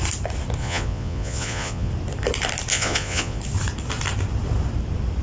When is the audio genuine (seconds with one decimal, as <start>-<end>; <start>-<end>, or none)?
0.0-0.6; 1.9-2.7; 3.4-5.2